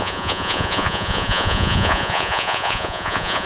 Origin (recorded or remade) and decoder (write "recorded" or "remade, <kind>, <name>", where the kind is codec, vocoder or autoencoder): remade, vocoder, Vocos